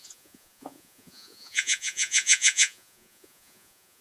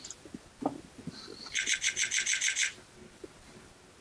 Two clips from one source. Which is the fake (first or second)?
first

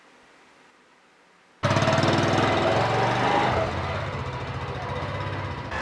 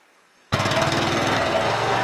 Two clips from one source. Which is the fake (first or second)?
second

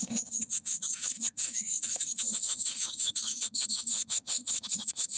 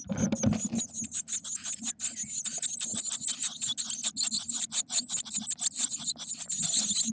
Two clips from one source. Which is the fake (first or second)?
first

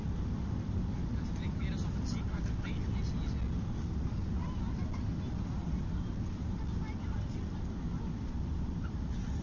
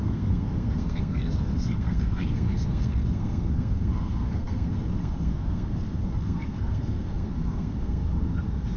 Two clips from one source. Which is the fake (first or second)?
second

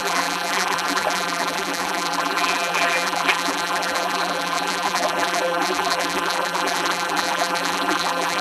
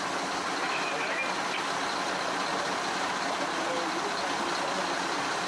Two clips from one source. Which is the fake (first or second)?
first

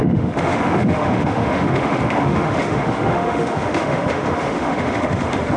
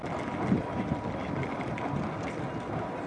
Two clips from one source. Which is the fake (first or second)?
first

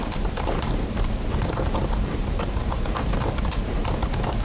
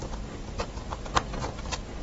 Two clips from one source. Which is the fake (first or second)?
first